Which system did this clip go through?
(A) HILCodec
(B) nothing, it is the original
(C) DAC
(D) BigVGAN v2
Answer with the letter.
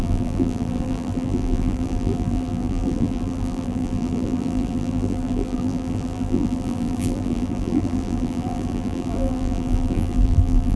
D